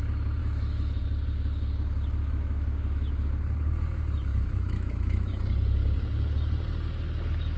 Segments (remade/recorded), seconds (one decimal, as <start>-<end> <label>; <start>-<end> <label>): 0.0-0.4 recorded; 0.4-1.0 remade; 1.0-2.2 recorded; 2.2-3.3 remade; 3.3-4.3 recorded; 4.3-5.4 remade; 5.4-7.6 recorded